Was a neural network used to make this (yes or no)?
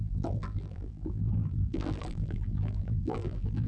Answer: yes